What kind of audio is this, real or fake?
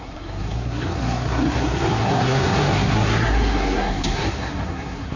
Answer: fake